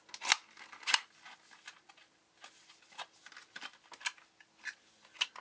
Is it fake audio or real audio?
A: real